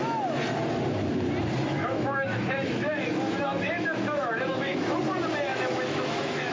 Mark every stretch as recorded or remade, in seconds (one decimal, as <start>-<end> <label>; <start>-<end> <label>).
0.0-1.7 recorded; 1.7-5.0 remade; 5.0-5.5 recorded; 5.5-6.5 remade